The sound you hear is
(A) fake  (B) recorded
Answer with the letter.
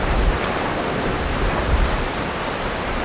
A